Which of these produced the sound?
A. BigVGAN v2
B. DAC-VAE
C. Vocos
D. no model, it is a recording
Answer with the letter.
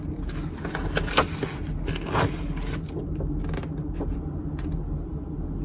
D